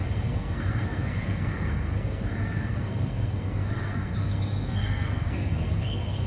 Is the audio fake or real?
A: fake